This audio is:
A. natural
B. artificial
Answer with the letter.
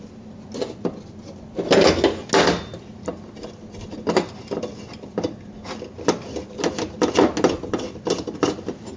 A